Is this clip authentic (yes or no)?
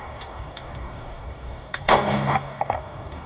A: no